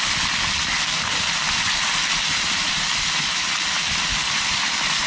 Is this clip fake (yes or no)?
no